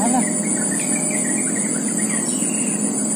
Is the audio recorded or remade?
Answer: recorded